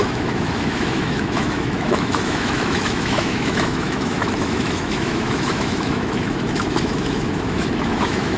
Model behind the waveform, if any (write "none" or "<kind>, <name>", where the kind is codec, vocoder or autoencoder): autoencoder, DAC-VAE